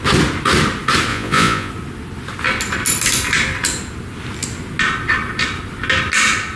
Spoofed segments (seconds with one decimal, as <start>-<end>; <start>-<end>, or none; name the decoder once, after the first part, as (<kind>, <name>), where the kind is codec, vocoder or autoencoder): 1.1-1.7 (vocoder, Vocos)